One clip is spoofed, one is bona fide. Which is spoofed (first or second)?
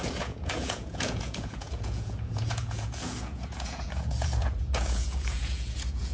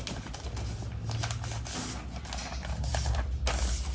first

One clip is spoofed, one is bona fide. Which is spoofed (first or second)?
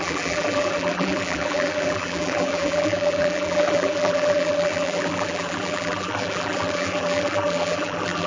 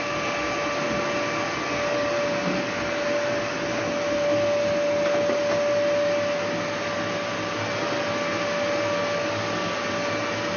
first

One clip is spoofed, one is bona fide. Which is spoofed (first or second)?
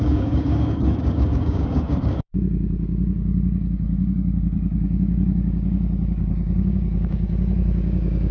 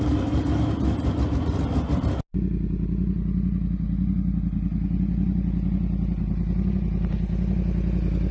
first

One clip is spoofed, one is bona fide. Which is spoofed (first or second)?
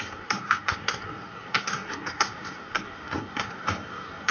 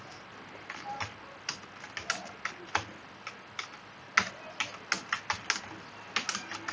first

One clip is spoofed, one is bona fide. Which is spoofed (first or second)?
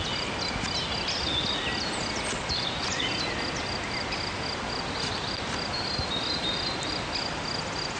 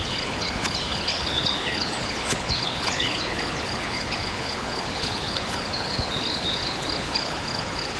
second